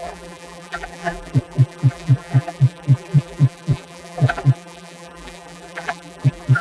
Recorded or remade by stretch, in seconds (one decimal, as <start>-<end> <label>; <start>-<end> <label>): 0.0-6.6 remade

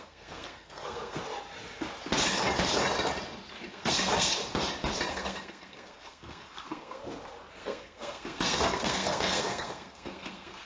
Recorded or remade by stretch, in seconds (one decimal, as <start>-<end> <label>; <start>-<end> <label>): 0.0-1.2 remade; 1.2-3.7 recorded; 3.7-4.4 remade; 4.4-5.1 recorded; 5.1-7.0 remade; 7.0-7.5 recorded; 7.5-10.7 remade